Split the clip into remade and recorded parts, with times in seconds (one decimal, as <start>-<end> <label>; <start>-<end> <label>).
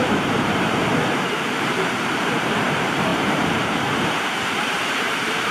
0.0-0.8 remade; 0.8-1.3 recorded; 1.3-5.5 remade